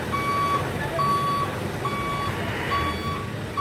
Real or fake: real